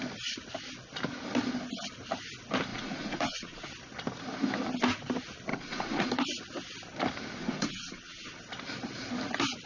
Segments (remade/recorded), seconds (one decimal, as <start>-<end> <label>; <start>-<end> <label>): 0.0-2.7 recorded; 2.7-3.7 remade; 3.7-5.5 recorded; 5.5-6.1 remade; 6.1-7.4 recorded; 7.4-8.4 remade; 8.4-9.7 recorded